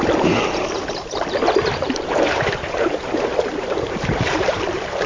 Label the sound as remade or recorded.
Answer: remade